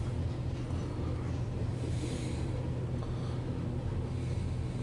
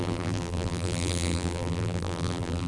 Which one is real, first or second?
first